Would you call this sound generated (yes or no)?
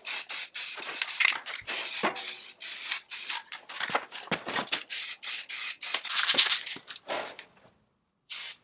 no